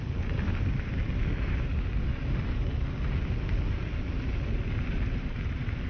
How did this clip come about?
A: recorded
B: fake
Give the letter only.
A